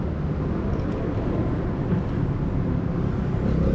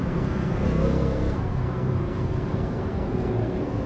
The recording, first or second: first